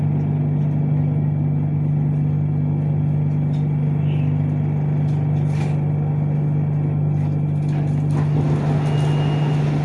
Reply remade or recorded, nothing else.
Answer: recorded